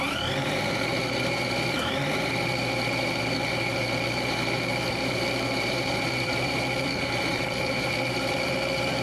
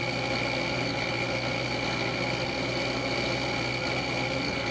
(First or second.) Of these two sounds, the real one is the second